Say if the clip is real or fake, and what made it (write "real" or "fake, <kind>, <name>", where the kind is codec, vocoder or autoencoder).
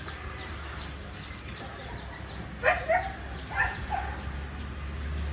real